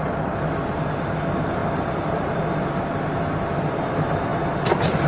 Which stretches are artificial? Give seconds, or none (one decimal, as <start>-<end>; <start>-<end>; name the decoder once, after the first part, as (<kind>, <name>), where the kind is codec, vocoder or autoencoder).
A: none